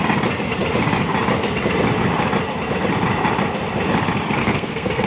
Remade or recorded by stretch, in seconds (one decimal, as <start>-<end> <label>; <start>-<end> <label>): 0.0-4.4 recorded; 4.4-5.1 remade